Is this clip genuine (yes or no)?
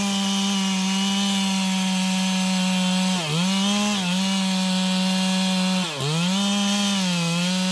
yes